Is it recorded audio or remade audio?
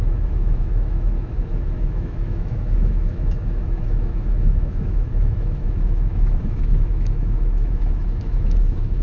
remade